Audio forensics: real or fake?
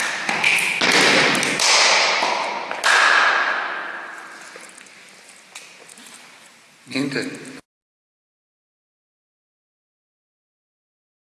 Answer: real